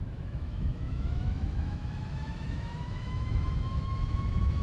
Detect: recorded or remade remade